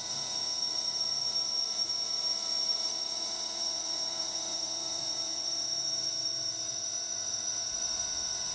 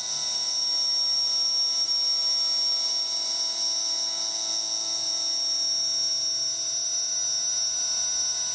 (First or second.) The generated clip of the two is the first